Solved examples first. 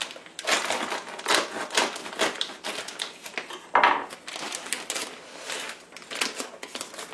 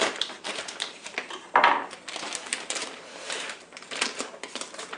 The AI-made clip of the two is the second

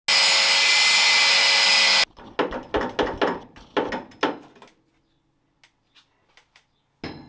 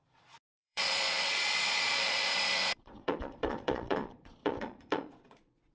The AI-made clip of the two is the second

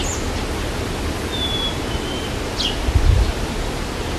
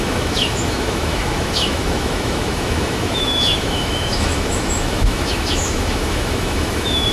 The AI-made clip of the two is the second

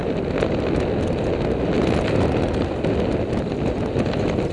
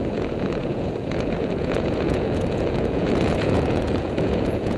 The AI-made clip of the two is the second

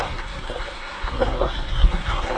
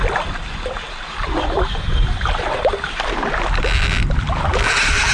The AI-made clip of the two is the first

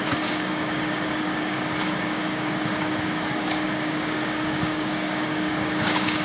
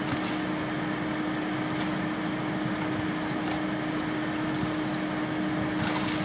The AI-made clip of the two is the first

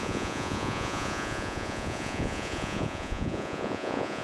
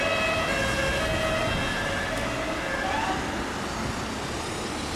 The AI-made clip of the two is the first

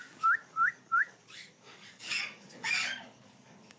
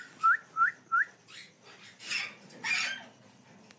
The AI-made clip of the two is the first